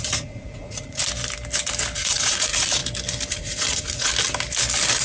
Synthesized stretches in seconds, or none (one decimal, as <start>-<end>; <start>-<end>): 0.0-1.0; 2.0-2.8; 3.3-4.1